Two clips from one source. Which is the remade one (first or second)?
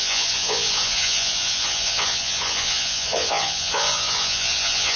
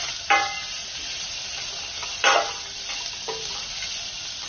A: first